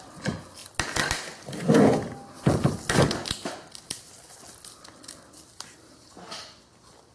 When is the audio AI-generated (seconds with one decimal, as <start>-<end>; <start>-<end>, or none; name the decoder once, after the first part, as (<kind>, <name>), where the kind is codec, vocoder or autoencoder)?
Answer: none